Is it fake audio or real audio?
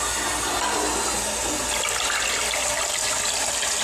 real